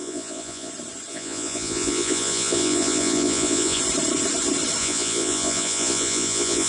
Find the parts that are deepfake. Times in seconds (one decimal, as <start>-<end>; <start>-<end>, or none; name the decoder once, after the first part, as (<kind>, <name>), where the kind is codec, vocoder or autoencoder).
0.0-0.7 (vocoder, Vocos); 1.1-3.8; 4.8-6.7